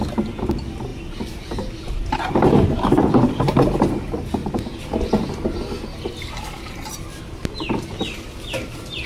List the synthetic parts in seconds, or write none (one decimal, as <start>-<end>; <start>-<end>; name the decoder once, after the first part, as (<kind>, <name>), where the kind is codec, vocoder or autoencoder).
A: 0.9-3.9 (vocoder, BigVGAN v2)